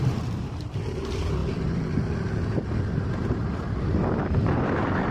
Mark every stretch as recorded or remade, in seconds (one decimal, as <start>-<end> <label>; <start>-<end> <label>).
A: 0.0-1.4 remade; 1.4-2.8 recorded; 2.8-5.1 remade